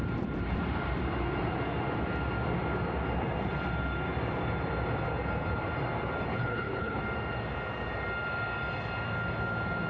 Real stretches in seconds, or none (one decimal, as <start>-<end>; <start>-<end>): 0.0-6.3; 7.0-9.9